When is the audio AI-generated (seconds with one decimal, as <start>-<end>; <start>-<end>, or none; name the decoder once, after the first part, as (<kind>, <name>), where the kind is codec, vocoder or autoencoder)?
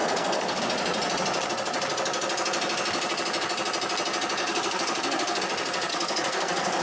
0.0-0.6 (codec, SNAC); 4.4-5.4; 5.9-6.8